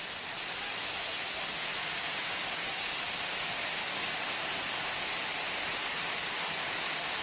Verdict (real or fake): real